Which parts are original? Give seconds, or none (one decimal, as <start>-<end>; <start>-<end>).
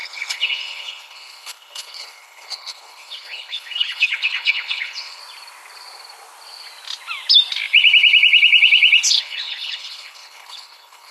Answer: 5.2-9.2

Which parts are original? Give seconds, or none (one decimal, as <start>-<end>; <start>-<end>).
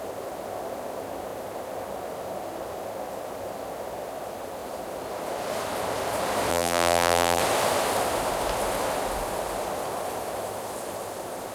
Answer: 0.0-6.5; 7.4-11.5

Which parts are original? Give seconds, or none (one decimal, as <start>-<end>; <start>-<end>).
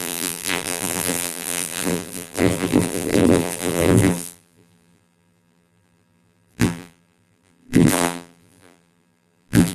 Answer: none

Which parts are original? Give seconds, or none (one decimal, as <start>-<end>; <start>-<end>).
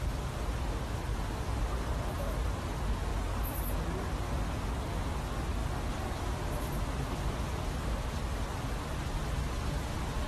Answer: 0.0-10.3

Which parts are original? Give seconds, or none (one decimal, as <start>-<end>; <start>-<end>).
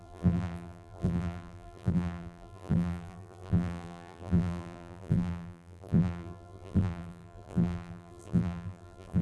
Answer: none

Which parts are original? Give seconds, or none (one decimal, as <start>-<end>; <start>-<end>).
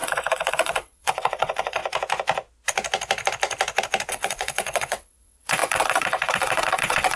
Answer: 1.8-4.1